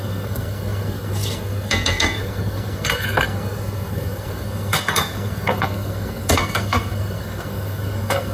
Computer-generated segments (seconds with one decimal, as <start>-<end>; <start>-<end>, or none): 0.0-8.3